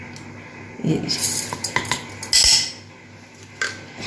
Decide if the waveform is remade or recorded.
recorded